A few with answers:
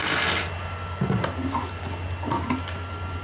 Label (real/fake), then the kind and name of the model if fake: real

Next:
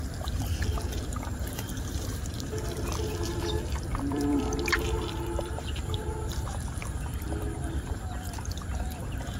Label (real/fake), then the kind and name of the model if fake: fake, vocoder, BigVGAN v2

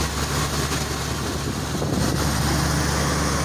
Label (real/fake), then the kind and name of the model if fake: real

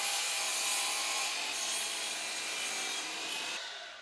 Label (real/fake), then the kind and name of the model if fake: real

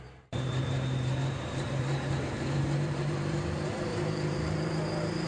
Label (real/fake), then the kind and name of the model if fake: fake, vocoder, BigVGAN v2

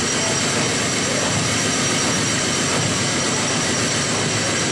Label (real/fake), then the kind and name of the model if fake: real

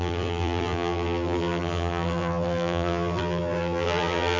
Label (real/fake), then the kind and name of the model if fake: fake, vocoder, BigVGAN v2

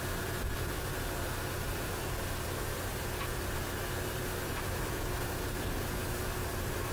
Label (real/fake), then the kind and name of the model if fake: fake, vocoder, BigVGAN v2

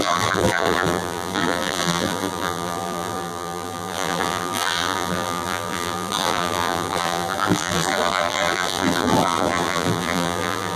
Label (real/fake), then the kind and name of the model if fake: fake, vocoder, BigVGAN v2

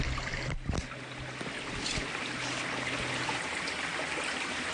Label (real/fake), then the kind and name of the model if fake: real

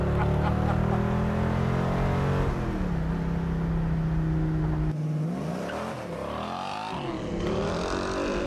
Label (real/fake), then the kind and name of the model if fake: real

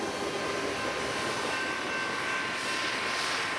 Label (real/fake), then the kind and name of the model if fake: real